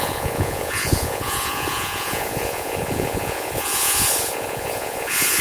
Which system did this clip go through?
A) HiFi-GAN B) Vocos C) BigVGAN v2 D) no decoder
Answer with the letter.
B